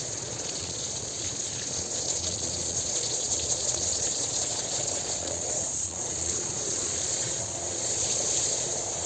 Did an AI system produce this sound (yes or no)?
yes